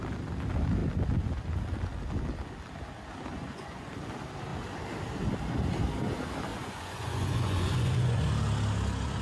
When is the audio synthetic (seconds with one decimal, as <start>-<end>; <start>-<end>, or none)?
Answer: 3.3-3.9; 6.5-8.3